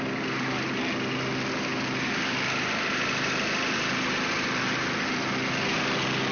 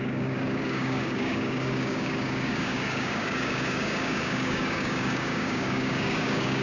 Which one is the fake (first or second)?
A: second